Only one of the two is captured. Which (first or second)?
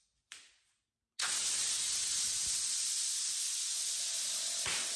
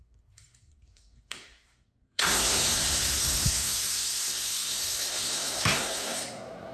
first